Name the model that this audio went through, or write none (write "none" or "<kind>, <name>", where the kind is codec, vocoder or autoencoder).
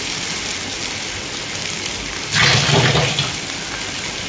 none